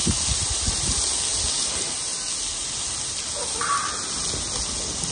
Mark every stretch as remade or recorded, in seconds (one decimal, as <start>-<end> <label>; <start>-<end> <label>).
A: 0.0-5.1 recorded